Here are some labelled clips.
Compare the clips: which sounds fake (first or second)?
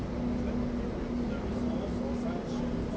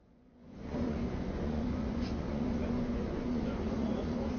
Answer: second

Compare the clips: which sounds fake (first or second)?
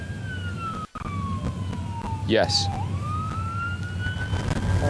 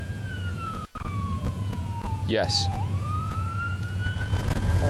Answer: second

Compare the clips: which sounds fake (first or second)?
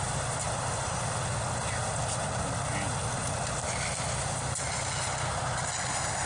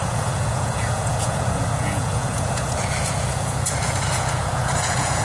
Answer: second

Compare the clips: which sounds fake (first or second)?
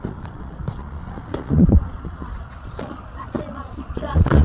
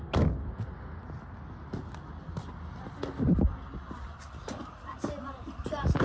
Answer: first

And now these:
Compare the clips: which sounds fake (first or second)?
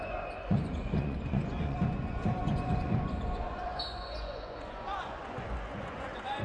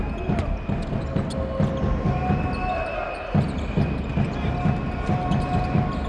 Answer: first